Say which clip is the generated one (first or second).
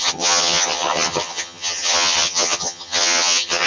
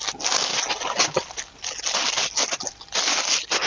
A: first